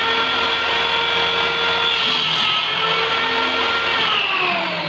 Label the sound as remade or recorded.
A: recorded